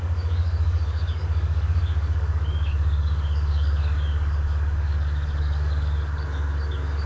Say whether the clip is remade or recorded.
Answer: remade